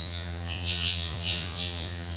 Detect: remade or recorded remade